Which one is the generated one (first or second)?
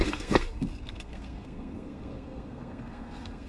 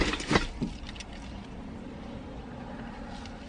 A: first